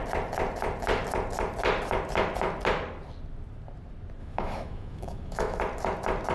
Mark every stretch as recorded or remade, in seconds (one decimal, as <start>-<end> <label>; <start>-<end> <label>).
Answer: 0.0-4.2 recorded; 4.2-5.6 remade; 5.6-6.3 recorded